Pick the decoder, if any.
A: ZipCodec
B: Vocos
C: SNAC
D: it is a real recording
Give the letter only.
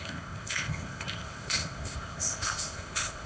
A